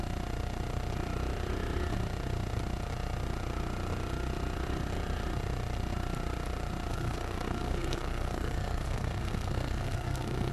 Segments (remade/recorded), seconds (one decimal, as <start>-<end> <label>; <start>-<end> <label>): 0.0-6.9 recorded; 6.9-10.5 remade